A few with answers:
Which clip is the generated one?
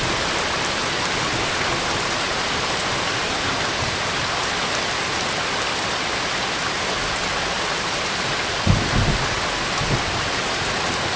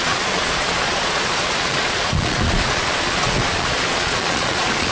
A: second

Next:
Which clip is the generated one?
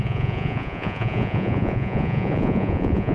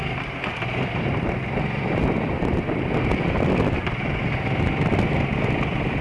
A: first